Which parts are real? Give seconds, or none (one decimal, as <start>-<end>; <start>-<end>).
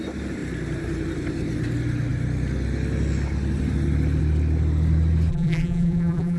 0.0-5.3